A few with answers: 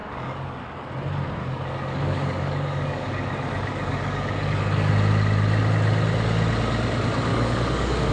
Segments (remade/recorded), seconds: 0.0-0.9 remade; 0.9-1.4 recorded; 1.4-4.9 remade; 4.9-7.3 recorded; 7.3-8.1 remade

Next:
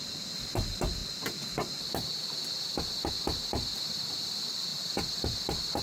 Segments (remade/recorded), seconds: 0.0-5.8 recorded

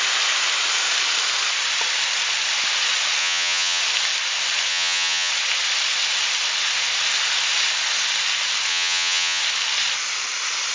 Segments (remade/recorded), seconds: 0.0-3.2 recorded; 3.2-3.8 remade; 3.8-4.7 recorded; 4.7-5.3 remade; 5.3-8.7 recorded; 8.7-9.4 remade; 9.4-10.7 recorded

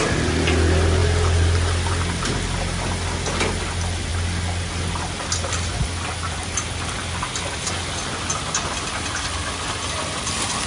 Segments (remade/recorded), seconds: 0.0-10.7 recorded